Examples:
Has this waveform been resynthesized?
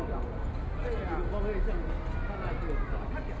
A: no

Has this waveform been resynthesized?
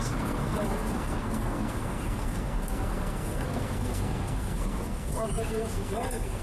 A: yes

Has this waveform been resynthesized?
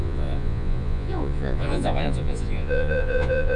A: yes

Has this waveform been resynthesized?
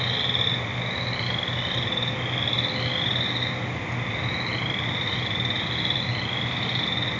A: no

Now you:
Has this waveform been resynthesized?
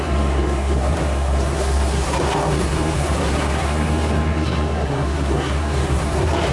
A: yes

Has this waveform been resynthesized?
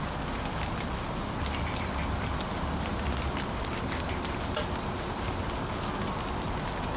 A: no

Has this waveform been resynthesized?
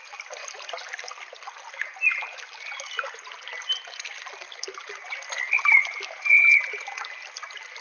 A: no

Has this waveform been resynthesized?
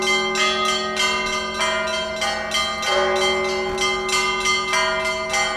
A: no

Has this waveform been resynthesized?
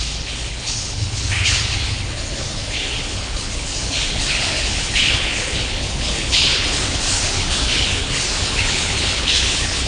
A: yes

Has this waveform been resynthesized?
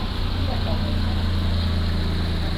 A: no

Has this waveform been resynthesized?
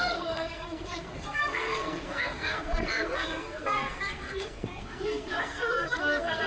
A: yes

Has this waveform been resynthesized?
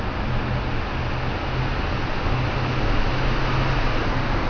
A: no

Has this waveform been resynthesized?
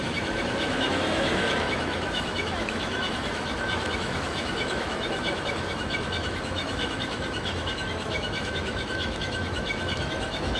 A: yes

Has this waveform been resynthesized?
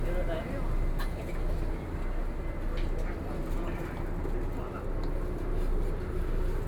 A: no